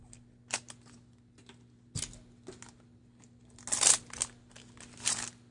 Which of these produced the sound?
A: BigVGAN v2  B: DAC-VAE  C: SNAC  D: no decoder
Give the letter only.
D